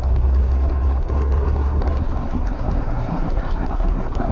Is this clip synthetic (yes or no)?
yes